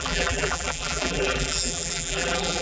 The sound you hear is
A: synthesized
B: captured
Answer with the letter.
A